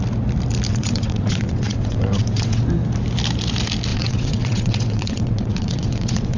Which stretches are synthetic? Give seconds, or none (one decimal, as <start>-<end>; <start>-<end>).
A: 0.7-2.6; 3.9-6.4